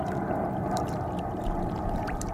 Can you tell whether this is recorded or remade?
remade